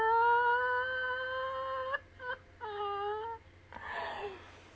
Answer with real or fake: real